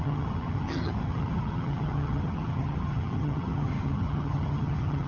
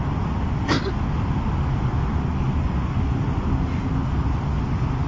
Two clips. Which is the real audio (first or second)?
second